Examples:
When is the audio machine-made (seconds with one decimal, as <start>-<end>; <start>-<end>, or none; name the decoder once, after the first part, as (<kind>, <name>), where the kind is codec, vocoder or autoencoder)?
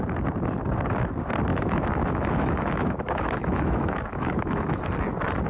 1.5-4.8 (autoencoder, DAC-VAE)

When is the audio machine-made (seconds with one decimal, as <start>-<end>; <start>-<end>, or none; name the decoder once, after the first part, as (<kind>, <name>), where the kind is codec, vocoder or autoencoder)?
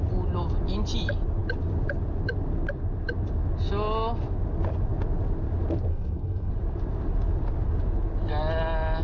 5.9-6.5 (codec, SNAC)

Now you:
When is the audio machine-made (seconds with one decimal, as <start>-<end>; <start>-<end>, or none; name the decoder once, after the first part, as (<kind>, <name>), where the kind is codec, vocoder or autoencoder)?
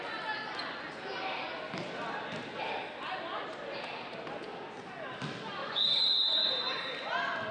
5.6-6.5 (vocoder, Vocos)